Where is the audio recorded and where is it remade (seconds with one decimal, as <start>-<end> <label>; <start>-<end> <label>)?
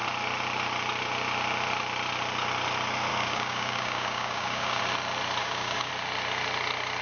0.0-3.1 recorded; 3.1-4.8 remade; 4.8-5.4 recorded; 5.4-5.9 remade; 5.9-7.0 recorded